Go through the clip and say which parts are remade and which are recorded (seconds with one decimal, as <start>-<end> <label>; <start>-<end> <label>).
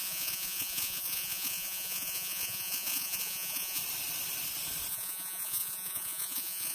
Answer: 0.0-3.8 remade; 3.8-4.9 recorded; 4.9-6.7 remade